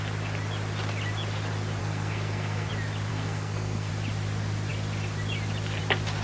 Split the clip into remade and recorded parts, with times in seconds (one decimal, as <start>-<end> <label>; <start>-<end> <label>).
0.0-1.8 recorded; 1.8-2.7 remade; 2.7-3.1 recorded; 3.1-3.9 remade; 3.9-6.2 recorded